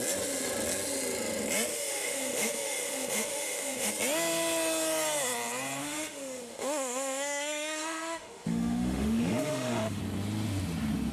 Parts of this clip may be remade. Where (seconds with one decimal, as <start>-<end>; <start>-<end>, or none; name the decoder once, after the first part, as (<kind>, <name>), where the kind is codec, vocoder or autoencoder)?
1.7-3.9 (autoencoder, DAC-VAE); 5.8-10.0